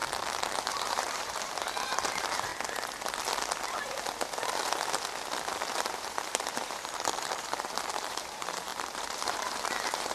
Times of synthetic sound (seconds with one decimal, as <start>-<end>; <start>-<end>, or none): 0.6-2.5; 5.9-10.1